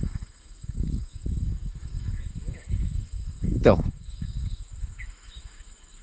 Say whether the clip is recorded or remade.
remade